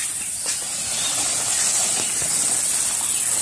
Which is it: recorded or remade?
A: recorded